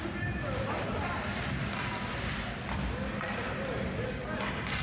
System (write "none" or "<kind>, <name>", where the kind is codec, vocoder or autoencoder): none